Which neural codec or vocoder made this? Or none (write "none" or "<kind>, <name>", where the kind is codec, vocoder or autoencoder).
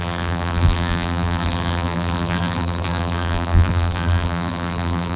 vocoder, BigVGAN v2